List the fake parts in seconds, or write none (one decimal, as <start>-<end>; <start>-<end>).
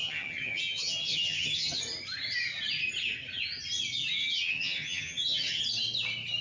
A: 0.0-1.8; 4.2-5.6